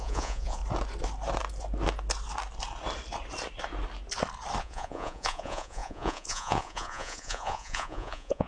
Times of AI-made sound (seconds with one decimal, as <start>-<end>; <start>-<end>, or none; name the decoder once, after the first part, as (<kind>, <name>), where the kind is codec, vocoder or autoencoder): 0.0-0.6 (vocoder, Vocos); 4.6-8.5